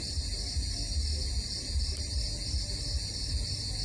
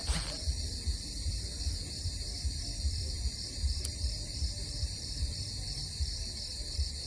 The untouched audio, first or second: first